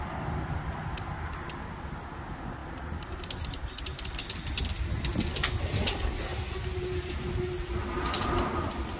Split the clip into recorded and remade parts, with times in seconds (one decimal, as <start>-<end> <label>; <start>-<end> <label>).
0.0-9.0 recorded